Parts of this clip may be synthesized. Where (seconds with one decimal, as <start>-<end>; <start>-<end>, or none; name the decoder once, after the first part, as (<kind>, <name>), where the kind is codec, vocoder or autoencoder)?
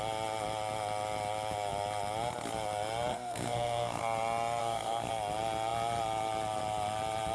3.1-4.0 (codec, SNAC); 4.6-5.1